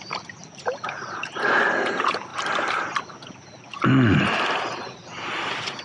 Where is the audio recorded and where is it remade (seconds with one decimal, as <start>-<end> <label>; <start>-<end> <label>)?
0.0-0.4 recorded; 0.4-1.6 remade; 1.6-2.3 recorded; 2.3-3.3 remade; 3.3-5.8 recorded